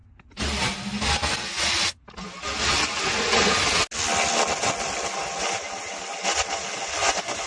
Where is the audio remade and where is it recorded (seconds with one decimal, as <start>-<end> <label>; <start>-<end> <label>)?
0.0-7.0 recorded; 7.0-7.5 remade